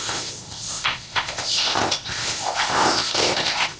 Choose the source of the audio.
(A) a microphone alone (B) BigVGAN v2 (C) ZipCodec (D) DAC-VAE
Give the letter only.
C